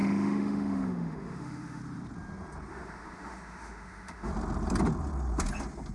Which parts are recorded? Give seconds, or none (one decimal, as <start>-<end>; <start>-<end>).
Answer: 1.8-2.7; 4.3-5.9